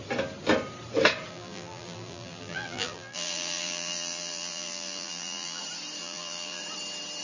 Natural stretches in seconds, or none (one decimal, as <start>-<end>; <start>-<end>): 0.0-1.3; 5.6-6.0; 6.6-7.2